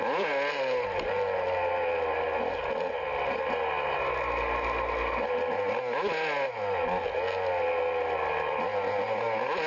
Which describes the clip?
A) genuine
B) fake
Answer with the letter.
A